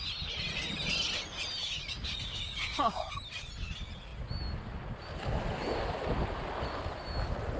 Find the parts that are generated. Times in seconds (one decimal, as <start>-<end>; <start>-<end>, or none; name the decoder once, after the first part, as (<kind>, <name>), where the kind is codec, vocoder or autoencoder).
1.6-3.1 (codec, DAC)